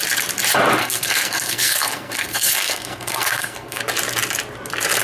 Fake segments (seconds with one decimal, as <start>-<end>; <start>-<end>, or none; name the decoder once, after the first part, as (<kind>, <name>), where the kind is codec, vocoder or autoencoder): 0.8-3.8 (codec, SNAC)